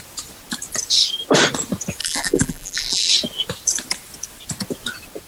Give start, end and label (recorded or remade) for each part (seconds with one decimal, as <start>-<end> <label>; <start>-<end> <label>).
0.0-2.0 recorded; 2.0-3.1 remade; 3.1-5.3 recorded